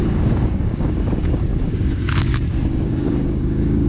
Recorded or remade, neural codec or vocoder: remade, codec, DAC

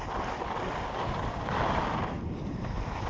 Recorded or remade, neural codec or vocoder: recorded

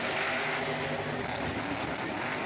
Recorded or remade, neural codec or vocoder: recorded